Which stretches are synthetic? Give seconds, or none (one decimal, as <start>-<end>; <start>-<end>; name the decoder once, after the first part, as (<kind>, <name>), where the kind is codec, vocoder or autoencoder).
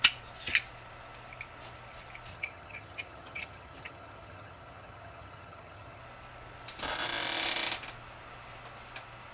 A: 2.3-6.0 (vocoder, HiFi-GAN)